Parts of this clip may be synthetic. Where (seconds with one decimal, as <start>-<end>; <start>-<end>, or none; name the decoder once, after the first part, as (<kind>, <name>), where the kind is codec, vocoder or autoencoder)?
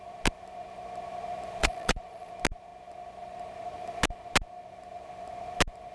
1.6-2.3 (vocoder, Vocos)